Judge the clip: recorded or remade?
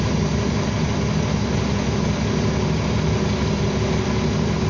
recorded